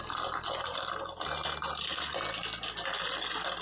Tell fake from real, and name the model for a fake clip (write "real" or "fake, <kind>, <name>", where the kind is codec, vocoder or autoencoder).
real